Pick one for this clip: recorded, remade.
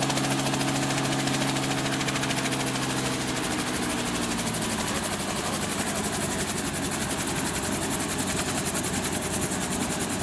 recorded